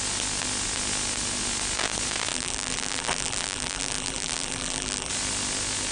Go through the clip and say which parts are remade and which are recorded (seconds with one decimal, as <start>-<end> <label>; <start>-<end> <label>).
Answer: 0.0-2.3 recorded; 2.3-5.1 remade; 5.1-5.9 recorded